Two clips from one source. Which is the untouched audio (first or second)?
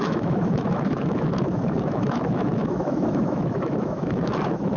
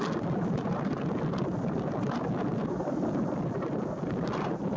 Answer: second